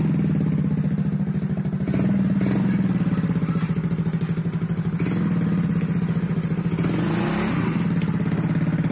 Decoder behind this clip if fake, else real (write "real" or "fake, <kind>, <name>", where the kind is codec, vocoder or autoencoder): real